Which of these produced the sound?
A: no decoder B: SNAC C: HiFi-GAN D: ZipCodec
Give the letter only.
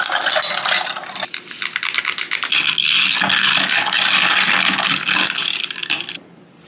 A